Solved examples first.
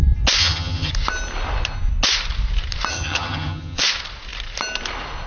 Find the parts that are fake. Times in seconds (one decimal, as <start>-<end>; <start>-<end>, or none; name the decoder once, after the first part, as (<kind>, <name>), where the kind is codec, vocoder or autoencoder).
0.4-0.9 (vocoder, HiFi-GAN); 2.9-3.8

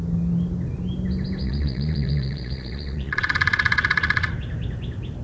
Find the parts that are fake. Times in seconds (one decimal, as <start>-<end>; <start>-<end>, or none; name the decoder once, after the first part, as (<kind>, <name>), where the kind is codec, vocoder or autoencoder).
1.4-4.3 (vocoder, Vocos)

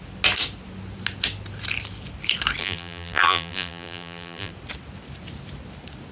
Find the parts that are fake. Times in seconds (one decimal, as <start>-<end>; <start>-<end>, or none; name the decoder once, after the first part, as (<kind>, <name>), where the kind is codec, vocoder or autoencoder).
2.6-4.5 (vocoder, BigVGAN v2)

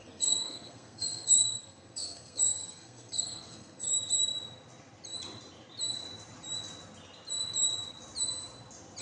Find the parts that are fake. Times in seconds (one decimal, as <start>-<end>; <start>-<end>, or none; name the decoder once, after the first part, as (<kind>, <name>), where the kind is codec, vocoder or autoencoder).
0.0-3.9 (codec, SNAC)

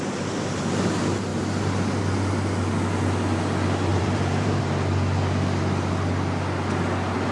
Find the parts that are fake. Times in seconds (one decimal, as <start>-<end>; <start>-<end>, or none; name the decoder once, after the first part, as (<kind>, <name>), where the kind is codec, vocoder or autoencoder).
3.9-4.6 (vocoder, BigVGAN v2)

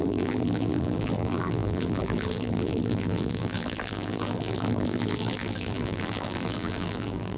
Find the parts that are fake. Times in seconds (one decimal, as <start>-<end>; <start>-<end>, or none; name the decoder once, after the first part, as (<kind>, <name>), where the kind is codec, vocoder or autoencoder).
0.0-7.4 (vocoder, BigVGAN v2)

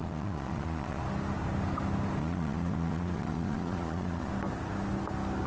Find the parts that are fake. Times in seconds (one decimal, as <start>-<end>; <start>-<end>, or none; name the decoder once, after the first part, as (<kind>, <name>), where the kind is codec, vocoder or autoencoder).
0.0-1.0 (vocoder, Vocos); 2.2-4.3

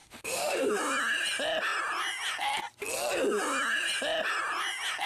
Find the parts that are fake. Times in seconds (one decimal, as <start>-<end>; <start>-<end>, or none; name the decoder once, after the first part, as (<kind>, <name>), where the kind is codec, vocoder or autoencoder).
0.0-0.7 (autoencoder, DAC-VAE)